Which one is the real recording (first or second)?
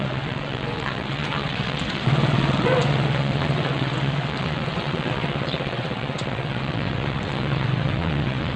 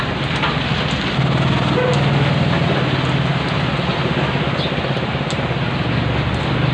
second